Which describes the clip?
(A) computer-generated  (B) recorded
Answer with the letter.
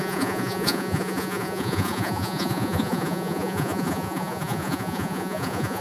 A